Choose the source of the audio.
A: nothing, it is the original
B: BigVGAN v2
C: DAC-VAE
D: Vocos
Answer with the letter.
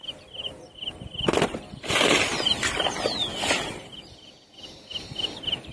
A